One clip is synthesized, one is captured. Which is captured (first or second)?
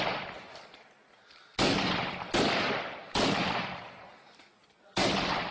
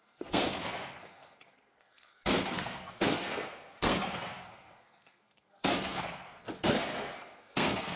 first